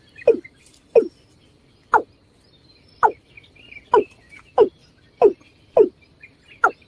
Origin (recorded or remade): recorded